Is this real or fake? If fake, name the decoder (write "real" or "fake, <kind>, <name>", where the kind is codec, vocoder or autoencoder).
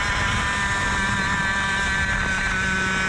real